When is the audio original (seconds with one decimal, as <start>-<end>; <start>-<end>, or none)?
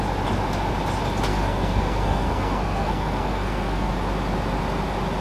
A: 0.0-1.3; 3.9-5.2